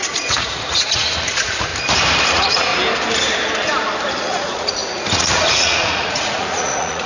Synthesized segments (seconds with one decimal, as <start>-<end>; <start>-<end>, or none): 0.0-1.7; 2.3-2.7; 4.2-7.1